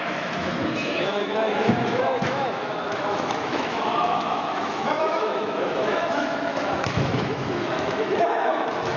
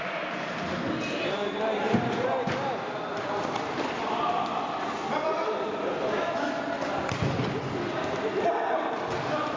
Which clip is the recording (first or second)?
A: second